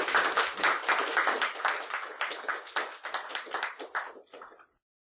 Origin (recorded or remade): recorded